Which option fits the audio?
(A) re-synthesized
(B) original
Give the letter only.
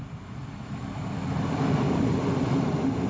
B